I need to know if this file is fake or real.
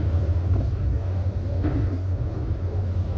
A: fake